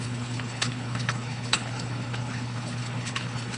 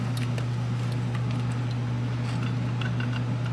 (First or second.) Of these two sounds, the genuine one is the second